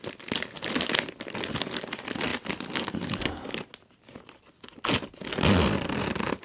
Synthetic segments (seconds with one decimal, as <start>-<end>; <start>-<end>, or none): none